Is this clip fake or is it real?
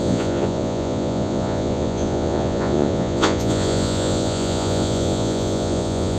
fake